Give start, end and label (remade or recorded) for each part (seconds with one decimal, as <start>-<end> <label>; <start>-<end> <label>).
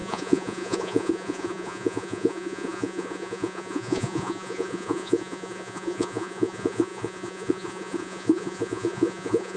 0.0-9.6 remade